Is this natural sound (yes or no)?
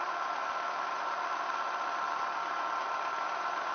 yes